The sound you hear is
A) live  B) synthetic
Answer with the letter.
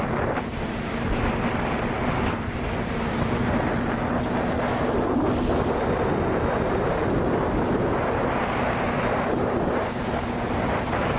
A